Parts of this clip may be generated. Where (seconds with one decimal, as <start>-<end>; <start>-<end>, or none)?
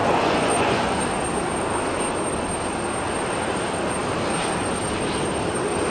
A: 0.0-1.0